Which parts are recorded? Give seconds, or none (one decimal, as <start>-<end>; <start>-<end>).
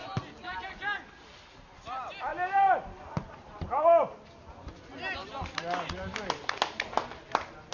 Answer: 0.0-7.7